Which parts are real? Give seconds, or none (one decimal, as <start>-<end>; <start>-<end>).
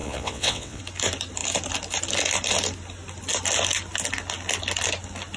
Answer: 0.8-5.4